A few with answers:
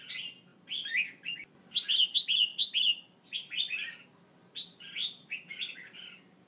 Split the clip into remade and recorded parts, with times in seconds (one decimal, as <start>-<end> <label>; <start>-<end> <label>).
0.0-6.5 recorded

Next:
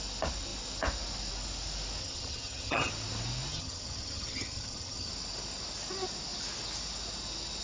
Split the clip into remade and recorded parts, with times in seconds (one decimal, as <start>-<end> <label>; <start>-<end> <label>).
0.0-2.0 recorded; 2.0-2.9 remade; 2.9-3.5 recorded; 3.5-5.1 remade; 5.1-7.6 recorded

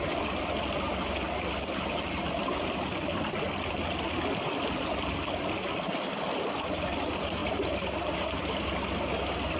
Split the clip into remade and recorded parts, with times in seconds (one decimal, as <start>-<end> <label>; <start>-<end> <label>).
0.0-9.6 recorded

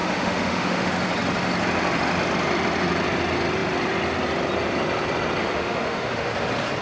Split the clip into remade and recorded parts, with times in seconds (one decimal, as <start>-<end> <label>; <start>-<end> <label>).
0.0-0.9 remade; 0.9-5.4 recorded; 5.4-6.3 remade; 6.3-6.8 recorded

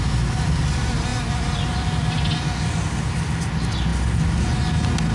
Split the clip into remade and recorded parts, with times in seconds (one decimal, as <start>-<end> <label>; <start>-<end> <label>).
0.0-5.1 recorded

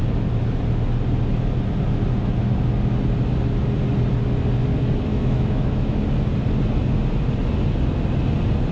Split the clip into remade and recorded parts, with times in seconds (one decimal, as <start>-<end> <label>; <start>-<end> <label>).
0.0-5.1 recorded; 5.1-6.0 remade; 6.0-8.7 recorded

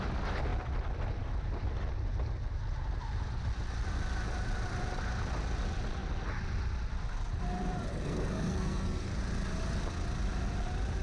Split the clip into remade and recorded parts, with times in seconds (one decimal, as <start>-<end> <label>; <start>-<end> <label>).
0.0-7.9 recorded; 7.9-9.2 remade; 9.2-11.0 recorded

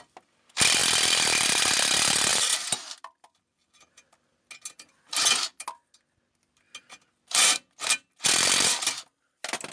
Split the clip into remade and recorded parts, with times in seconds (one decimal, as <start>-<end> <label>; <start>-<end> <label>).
0.0-0.8 recorded; 0.8-1.6 remade; 1.6-2.3 recorded; 2.3-3.8 remade; 3.8-9.7 recorded